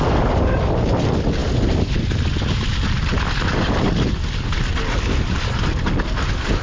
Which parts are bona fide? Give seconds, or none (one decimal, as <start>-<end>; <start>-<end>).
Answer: 0.0-6.6